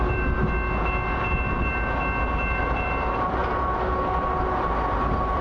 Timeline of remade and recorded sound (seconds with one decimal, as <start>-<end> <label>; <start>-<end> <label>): 0.0-0.4 remade; 0.4-2.6 recorded; 2.6-3.4 remade; 3.4-4.7 recorded; 4.7-5.4 remade